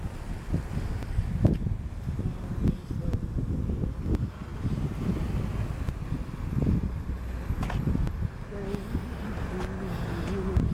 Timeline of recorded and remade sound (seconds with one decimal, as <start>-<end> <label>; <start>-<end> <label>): 0.0-10.7 recorded